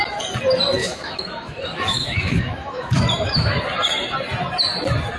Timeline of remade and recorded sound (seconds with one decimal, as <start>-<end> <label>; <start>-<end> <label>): 0.0-0.8 recorded; 0.8-3.6 remade; 3.6-5.2 recorded